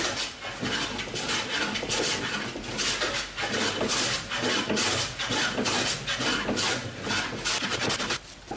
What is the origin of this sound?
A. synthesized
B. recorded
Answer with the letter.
B